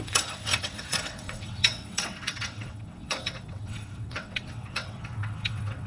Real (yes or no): no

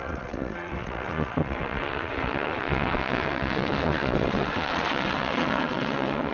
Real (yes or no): no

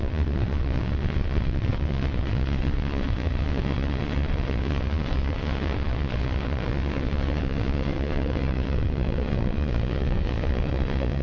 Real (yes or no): no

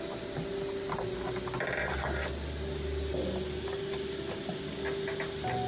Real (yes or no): yes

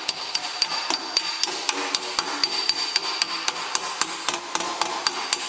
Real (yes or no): yes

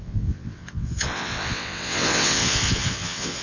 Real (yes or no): no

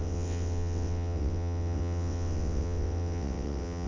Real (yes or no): no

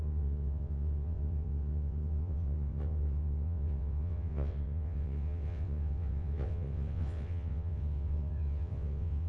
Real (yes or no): no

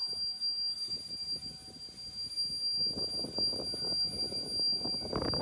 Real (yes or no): yes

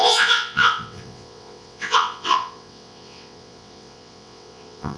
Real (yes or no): no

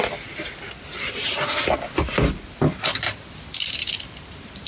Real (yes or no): yes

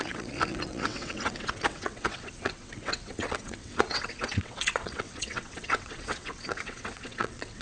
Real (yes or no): no